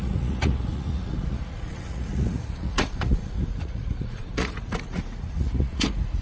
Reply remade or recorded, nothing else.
remade